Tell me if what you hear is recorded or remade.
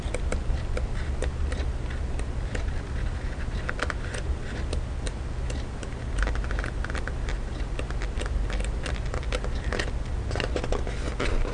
recorded